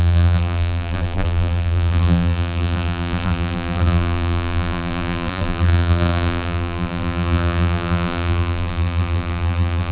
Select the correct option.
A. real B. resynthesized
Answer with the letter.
B